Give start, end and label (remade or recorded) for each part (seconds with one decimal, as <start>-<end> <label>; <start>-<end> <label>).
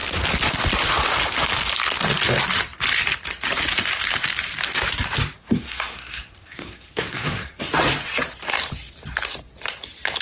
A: 0.0-5.4 recorded; 5.4-7.7 remade; 7.7-10.2 recorded